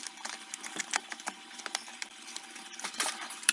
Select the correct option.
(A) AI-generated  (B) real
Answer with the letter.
A